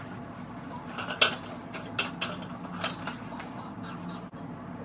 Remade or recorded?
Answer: recorded